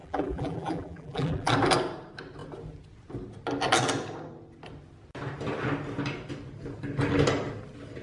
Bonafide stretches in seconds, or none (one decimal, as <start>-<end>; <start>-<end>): 1.5-8.0